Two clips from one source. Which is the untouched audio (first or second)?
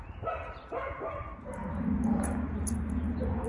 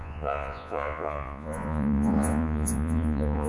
first